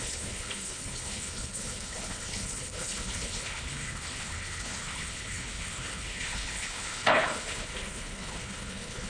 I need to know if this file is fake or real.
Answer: fake